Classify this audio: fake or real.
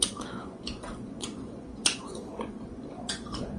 fake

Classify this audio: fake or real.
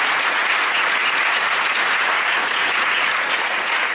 fake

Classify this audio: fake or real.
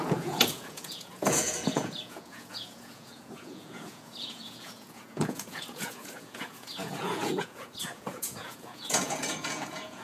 fake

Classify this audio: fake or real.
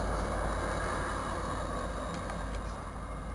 real